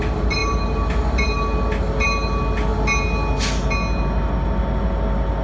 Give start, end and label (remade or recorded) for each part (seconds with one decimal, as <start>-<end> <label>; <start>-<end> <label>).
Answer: 0.0-5.4 recorded